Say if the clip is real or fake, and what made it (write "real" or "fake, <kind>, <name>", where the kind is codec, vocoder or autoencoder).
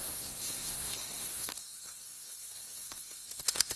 fake, codec, SNAC